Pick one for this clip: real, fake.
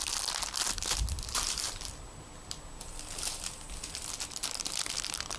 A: real